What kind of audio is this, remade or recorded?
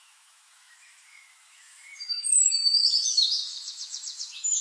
remade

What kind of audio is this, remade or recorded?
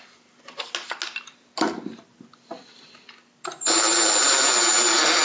recorded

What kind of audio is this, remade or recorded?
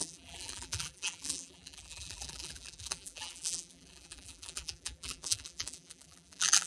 remade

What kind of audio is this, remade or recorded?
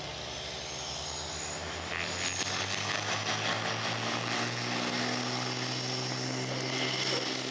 recorded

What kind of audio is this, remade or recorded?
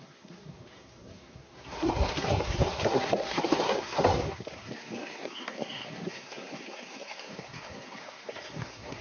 remade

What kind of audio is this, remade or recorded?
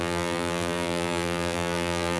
remade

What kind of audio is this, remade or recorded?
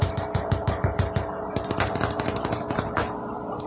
recorded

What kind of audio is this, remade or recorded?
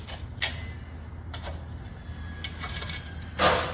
recorded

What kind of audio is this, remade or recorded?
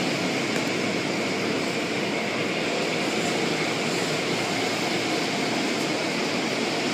recorded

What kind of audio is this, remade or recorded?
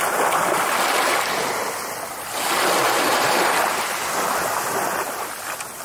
recorded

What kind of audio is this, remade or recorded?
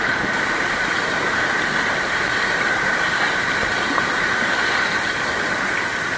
recorded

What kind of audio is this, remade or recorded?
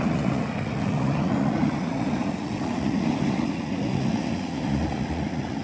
remade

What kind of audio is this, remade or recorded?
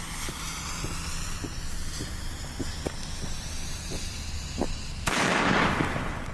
recorded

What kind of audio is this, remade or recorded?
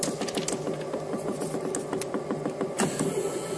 recorded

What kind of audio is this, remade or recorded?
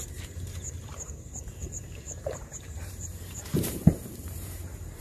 remade